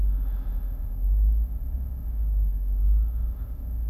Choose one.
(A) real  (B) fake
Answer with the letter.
B